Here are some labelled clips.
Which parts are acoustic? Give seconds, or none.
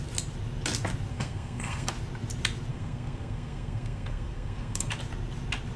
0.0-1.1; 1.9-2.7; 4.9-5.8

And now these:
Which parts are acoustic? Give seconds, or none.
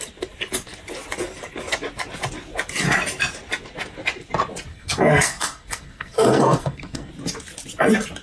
0.0-4.7; 7.1-8.2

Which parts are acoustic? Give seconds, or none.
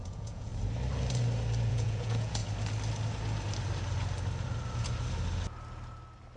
0.5-1.7; 2.4-6.4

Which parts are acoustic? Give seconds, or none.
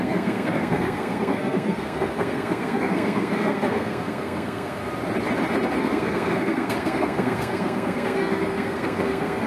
4.8-5.8